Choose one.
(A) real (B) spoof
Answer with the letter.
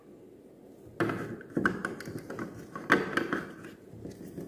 A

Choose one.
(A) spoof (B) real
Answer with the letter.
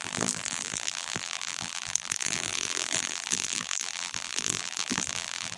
A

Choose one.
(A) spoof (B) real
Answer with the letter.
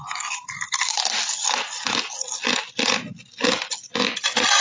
B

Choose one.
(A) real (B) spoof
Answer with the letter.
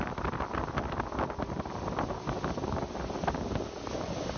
A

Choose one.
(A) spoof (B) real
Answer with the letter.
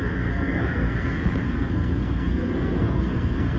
A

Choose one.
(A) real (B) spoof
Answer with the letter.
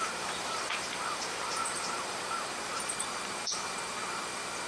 B